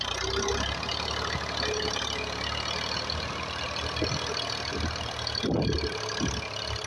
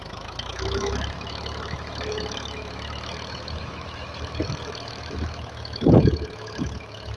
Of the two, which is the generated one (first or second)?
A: second